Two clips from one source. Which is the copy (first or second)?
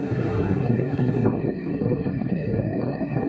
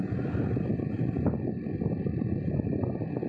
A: first